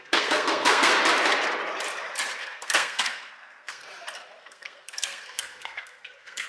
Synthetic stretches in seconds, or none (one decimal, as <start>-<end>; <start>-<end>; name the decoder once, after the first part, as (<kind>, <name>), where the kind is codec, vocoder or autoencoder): 0.0-0.9 (codec, SNAC); 2.4-3.9; 4.4-6.5